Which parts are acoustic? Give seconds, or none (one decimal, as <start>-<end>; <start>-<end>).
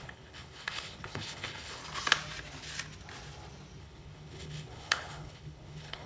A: 1.8-3.8